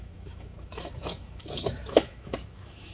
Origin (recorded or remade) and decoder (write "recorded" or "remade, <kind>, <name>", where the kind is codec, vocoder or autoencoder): remade, autoencoder, DAC-VAE